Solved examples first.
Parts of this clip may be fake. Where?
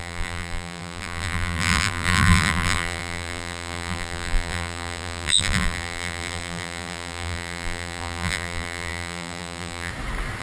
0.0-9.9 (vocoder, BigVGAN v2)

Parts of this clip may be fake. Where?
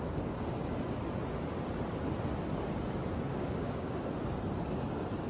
3.3-4.0 (codec, DAC)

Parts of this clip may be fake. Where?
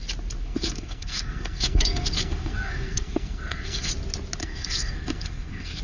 0.4-3.9 (codec, SNAC); 4.4-5.8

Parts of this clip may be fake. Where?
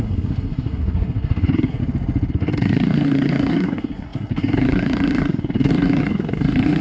0.0-1.8 (codec, SNAC); 2.3-6.8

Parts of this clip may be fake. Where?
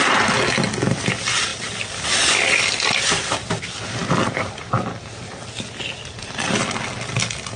none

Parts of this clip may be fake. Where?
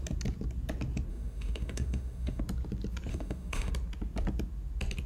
1.1-2.4 (autoencoder, DAC-VAE); 3.1-3.7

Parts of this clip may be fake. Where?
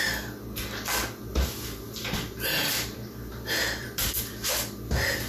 1.3-4.0 (vocoder, BigVGAN v2)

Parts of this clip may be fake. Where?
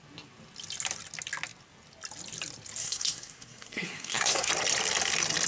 2.8-4.5 (codec, SNAC)